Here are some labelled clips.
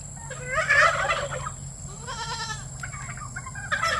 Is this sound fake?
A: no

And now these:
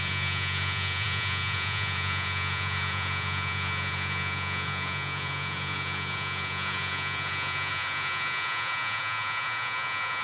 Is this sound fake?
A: yes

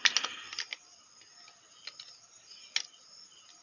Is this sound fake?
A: no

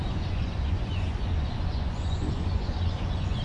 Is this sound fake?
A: yes